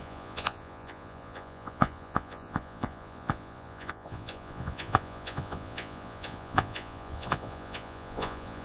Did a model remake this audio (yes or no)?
yes